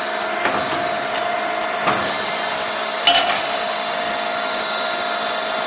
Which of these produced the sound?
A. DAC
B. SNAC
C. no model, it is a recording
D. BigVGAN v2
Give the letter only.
C